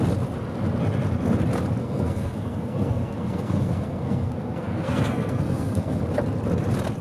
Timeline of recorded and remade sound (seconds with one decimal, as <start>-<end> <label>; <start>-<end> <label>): 0.0-1.8 recorded; 1.8-6.0 remade; 6.0-7.0 recorded